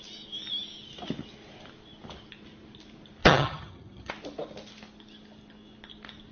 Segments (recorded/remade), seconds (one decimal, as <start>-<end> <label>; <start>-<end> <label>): 0.0-3.2 recorded; 3.2-4.1 remade; 4.1-6.3 recorded